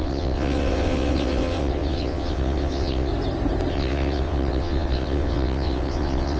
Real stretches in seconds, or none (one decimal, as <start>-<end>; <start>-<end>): 3.1-3.7